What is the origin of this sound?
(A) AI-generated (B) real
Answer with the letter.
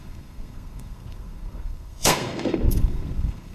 A